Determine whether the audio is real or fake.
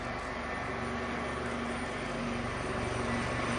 real